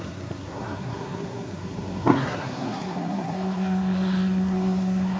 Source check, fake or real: fake